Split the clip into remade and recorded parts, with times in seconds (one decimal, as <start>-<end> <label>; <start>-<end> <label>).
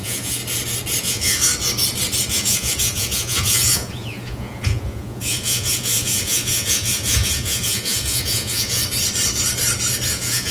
0.0-0.4 remade; 0.4-1.0 recorded; 1.0-1.5 remade; 1.5-2.3 recorded; 2.3-8.8 remade; 8.8-10.1 recorded; 10.1-10.5 remade